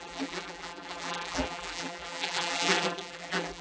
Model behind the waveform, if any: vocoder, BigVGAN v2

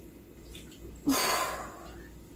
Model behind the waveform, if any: none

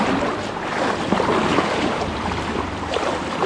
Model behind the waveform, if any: none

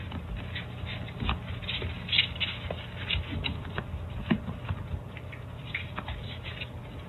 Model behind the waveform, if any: none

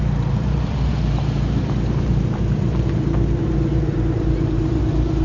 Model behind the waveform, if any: vocoder, BigVGAN v2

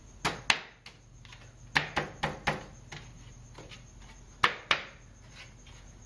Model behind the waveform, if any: none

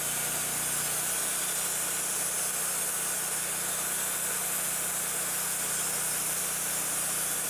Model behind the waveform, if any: vocoder, BigVGAN v2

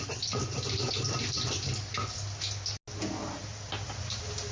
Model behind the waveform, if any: none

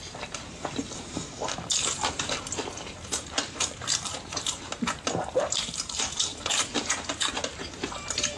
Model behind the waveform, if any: vocoder, BigVGAN v2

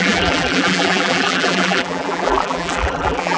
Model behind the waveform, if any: vocoder, BigVGAN v2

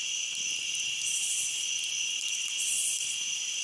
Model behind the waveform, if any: none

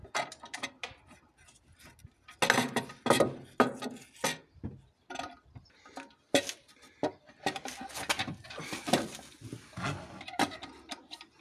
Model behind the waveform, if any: none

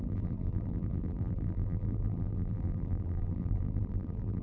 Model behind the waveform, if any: vocoder, BigVGAN v2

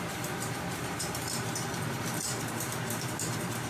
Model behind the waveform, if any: vocoder, BigVGAN v2